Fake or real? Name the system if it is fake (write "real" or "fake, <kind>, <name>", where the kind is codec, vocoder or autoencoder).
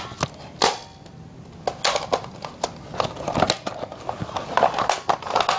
real